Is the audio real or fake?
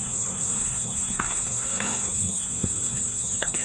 fake